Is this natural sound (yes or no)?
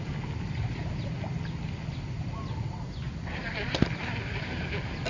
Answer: yes